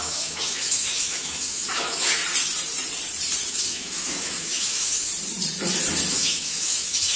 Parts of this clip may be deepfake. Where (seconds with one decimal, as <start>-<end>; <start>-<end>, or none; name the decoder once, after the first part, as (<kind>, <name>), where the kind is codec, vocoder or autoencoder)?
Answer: 0.0-2.2 (autoencoder, DAC-VAE); 3.5-5.1; 6.1-7.2